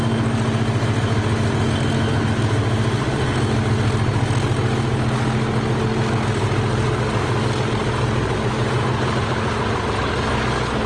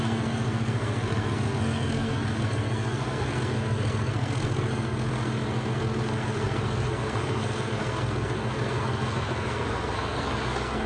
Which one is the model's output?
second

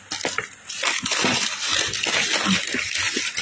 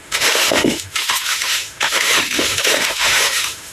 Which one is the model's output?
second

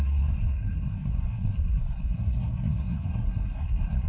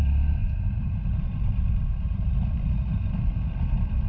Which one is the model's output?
first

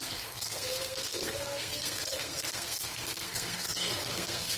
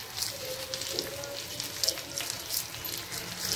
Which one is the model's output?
first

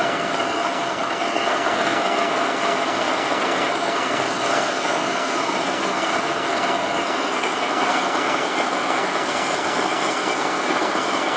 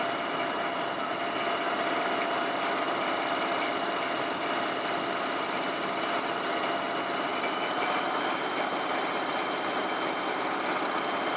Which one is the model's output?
first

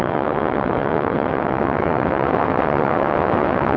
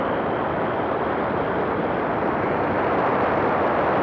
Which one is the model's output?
first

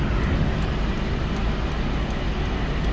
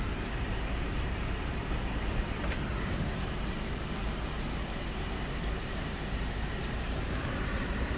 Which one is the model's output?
second